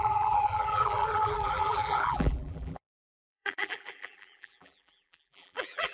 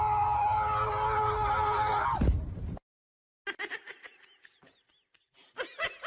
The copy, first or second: first